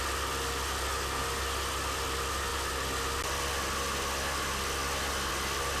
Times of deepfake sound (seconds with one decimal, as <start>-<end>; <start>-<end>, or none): none